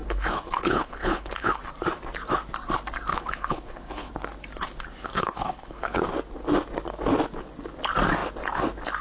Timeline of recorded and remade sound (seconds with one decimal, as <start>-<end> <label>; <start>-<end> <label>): 0.0-1.6 remade; 1.6-3.1 recorded; 3.1-4.1 remade; 4.1-5.1 recorded; 5.1-6.0 remade; 6.0-9.0 recorded